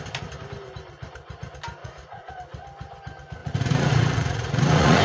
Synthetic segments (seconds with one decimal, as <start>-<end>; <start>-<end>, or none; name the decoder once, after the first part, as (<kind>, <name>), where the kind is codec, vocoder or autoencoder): 1.8-2.3 (vocoder, Vocos); 3.4-5.0